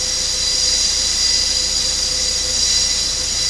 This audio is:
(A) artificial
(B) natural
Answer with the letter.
B